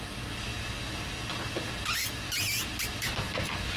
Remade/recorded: recorded